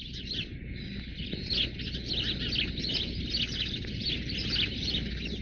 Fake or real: real